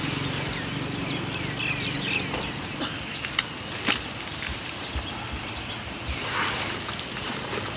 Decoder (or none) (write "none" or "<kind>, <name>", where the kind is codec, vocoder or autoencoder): none